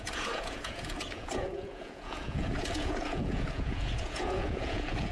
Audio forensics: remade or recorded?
remade